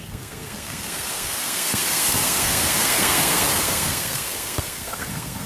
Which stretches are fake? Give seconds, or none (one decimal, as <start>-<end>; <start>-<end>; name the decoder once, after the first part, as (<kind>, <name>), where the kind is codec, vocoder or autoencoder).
0.0-5.5 (codec, SNAC)